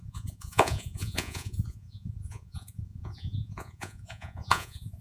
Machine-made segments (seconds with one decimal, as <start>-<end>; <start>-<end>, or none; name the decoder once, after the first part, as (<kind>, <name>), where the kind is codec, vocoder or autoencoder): 0.0-5.0 (vocoder, Vocos)